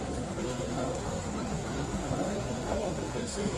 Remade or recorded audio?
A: remade